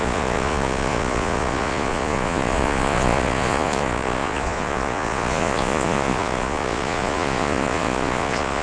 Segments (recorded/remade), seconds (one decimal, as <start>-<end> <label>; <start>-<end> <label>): 0.0-8.6 remade